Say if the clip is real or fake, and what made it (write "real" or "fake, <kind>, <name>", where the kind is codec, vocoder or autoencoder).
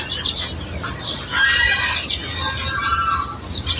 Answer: real